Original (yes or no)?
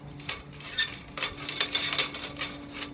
yes